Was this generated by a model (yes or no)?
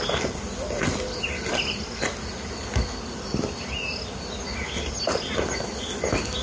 no